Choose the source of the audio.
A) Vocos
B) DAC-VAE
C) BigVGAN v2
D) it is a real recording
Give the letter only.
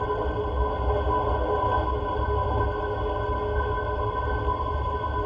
D